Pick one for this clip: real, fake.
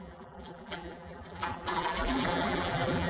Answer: fake